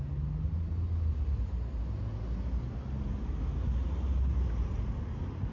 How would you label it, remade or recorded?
recorded